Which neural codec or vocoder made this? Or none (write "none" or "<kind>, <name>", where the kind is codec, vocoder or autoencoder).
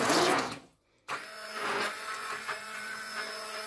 vocoder, Vocos